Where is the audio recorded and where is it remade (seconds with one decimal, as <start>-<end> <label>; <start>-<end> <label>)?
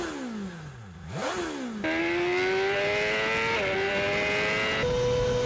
0.0-5.5 recorded